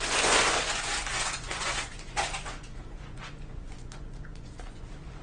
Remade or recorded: remade